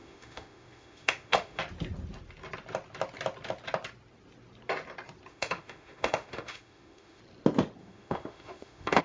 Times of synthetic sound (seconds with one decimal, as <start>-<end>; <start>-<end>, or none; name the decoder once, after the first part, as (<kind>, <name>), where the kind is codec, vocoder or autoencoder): 0.0-1.6 (autoencoder, DAC-VAE); 5.3-7.2; 7.8-9.0